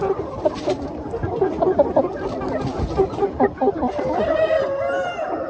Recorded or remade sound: recorded